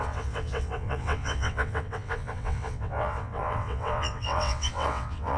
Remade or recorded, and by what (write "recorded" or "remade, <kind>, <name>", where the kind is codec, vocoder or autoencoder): remade, vocoder, WaveNeXt